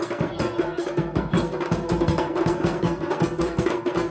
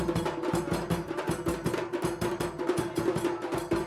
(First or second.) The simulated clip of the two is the first